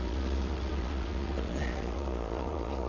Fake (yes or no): yes